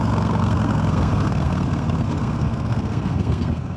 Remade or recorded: remade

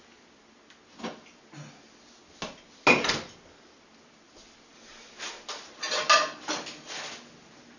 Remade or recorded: recorded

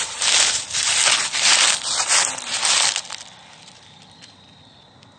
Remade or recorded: recorded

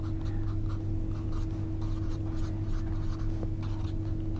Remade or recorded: recorded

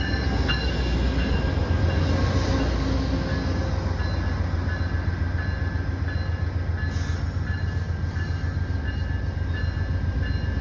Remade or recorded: recorded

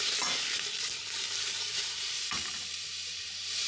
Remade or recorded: remade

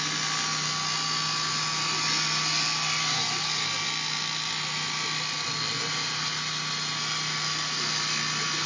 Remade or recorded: recorded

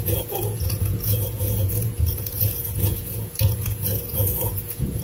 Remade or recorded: remade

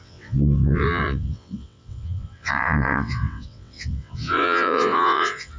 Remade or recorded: remade